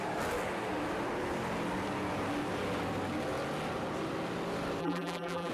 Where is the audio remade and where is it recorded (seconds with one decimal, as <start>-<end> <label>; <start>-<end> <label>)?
0.0-4.8 recorded; 4.8-5.5 remade